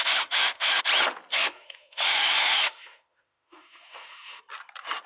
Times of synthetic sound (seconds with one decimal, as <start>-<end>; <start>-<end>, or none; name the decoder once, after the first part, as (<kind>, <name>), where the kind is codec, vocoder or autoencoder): 0.0-0.8 (autoencoder, DAC-VAE); 1.3-4.4

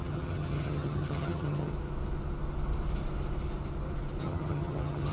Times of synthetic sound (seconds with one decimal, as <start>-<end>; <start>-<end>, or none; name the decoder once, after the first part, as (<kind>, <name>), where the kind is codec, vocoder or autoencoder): 0.0-1.7 (vocoder, HiFi-GAN); 4.2-5.1

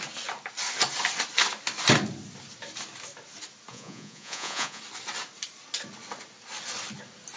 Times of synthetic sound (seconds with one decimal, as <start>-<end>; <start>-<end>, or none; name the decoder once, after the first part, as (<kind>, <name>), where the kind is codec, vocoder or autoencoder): 3.7-4.8 (vocoder, Vocos)

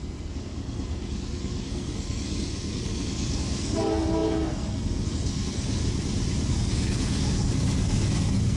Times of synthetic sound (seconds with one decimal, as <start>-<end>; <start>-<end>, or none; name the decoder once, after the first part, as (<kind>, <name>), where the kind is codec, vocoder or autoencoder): 0.0-5.8 (codec, SNAC); 6.5-8.6